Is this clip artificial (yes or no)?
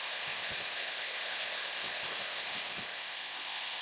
yes